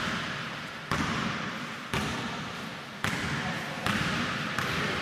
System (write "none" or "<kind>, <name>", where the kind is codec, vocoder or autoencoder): vocoder, BigVGAN v2